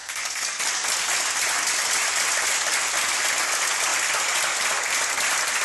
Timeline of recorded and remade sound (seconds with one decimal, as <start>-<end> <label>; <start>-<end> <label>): 0.0-0.6 remade; 0.6-5.6 recorded